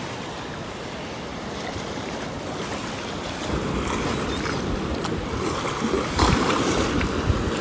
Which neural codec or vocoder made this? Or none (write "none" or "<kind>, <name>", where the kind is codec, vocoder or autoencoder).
none